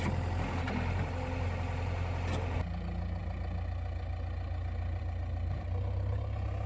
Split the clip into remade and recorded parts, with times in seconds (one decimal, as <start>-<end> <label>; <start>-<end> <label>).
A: 0.0-6.7 recorded